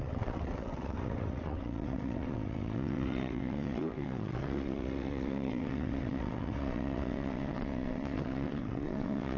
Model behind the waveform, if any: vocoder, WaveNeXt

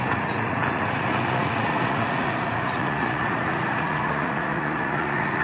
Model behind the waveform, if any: vocoder, Vocos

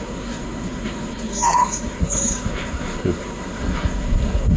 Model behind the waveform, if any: codec, SNAC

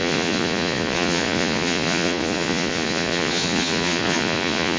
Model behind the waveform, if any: vocoder, Vocos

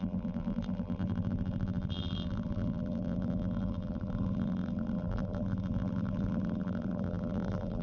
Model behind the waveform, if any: vocoder, BigVGAN v2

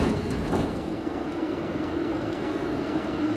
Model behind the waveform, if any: codec, SNAC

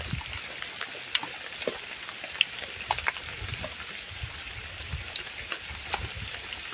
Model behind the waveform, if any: none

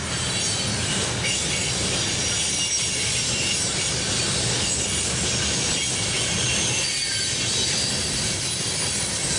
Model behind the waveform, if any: none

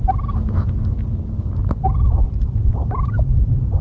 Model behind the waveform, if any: none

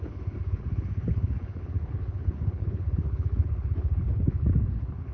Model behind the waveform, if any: codec, HILCodec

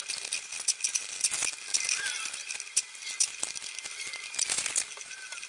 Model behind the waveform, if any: none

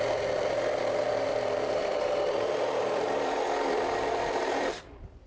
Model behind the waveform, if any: vocoder, BigVGAN v2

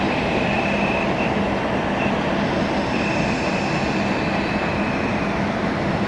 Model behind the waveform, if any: none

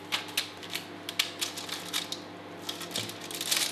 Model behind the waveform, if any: none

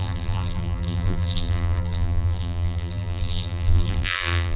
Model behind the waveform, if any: vocoder, BigVGAN v2